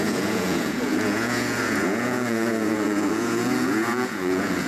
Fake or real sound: fake